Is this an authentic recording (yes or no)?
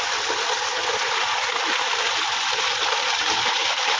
yes